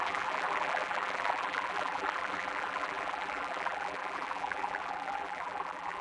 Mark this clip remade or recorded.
remade